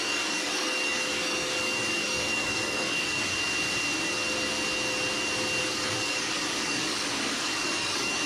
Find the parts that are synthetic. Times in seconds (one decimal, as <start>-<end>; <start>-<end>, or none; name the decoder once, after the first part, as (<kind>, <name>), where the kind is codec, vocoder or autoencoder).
0.0-3.3 (codec, DAC); 5.6-8.3